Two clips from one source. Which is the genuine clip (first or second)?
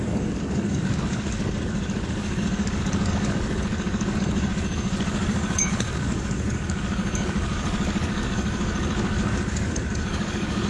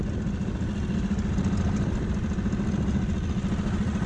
second